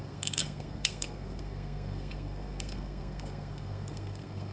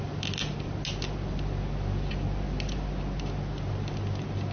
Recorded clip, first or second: second